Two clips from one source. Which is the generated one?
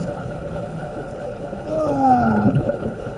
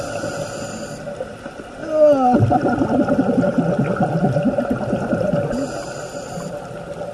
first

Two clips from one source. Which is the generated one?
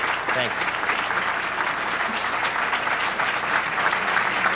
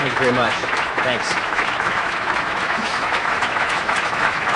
second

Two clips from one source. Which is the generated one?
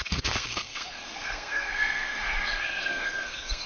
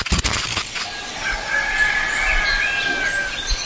first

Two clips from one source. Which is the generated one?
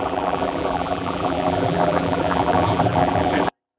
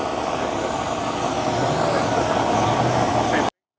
first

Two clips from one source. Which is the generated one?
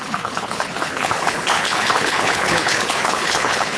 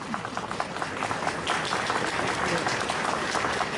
first